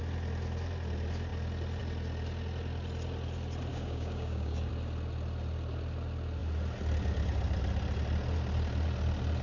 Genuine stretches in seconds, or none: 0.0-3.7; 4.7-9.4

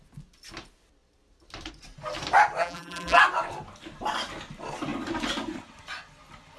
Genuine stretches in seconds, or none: 0.0-2.6; 3.2-6.6

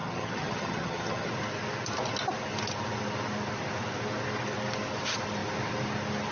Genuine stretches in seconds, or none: 1.3-6.3

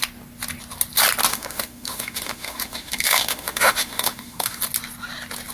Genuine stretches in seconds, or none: 0.0-1.3; 4.6-5.5

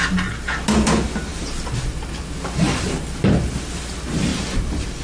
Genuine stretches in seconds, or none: 0.0-5.0

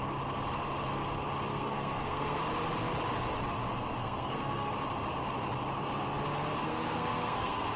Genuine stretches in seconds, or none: 0.0-1.5; 2.4-4.0; 4.7-6.6

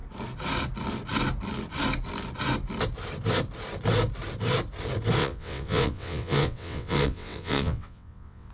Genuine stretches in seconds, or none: 0.0-5.2

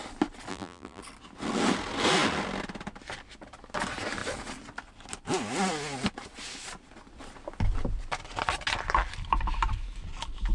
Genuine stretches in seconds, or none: 0.0-0.5; 1.0-10.5